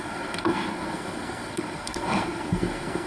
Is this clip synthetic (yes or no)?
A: yes